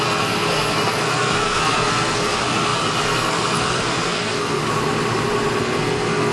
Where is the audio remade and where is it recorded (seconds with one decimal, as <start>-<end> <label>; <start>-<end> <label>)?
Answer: 0.0-4.6 remade; 4.6-5.6 recorded; 5.6-6.3 remade